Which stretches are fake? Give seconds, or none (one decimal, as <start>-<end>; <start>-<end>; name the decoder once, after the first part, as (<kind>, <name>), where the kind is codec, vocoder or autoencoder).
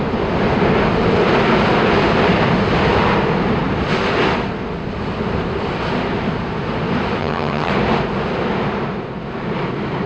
7.2-7.7 (vocoder, HiFi-GAN)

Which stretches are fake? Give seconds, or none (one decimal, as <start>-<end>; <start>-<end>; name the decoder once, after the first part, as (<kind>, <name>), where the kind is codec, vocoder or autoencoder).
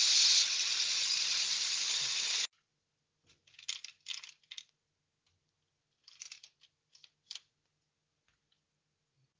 none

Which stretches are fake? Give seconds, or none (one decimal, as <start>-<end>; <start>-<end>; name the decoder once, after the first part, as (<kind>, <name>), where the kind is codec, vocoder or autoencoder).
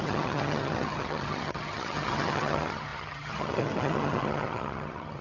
0.0-5.2 (vocoder, HiFi-GAN)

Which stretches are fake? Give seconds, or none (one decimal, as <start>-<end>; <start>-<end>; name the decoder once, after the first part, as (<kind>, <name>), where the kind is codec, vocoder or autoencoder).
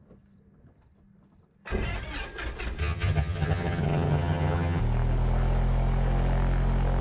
2.8-4.8 (vocoder, HiFi-GAN)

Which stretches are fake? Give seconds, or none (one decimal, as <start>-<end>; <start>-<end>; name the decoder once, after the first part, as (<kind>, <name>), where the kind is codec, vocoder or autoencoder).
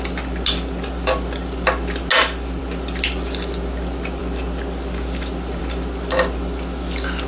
none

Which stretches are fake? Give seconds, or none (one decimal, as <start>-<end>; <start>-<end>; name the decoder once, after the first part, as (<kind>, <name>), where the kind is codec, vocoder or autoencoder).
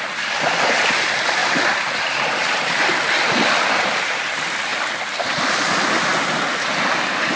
none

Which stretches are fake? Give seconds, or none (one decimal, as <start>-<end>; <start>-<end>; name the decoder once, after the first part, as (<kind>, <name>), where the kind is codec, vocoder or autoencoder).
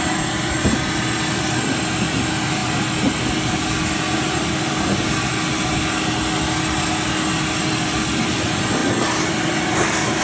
none